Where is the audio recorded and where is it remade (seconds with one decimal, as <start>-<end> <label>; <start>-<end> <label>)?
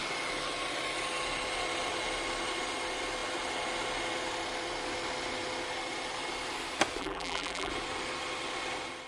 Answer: 0.0-7.0 recorded; 7.0-7.7 remade; 7.7-9.1 recorded